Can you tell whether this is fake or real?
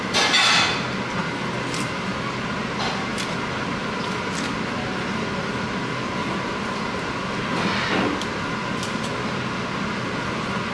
real